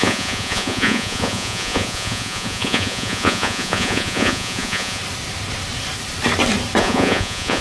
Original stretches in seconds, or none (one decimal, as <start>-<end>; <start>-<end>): 5.0-6.8